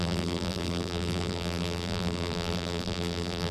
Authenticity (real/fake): fake